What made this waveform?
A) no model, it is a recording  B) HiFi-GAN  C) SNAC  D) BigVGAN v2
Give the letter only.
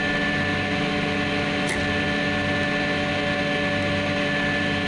A